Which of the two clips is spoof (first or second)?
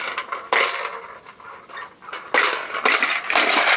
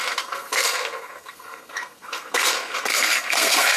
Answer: second